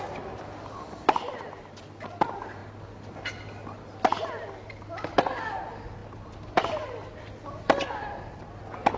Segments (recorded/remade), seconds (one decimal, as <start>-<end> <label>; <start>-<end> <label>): 0.0-9.0 recorded